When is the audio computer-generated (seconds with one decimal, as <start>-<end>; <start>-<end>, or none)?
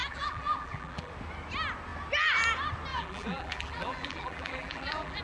0.0-1.1; 2.9-5.2